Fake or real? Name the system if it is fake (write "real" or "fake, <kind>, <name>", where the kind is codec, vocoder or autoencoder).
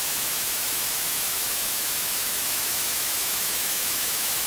fake, autoencoder, DAC-VAE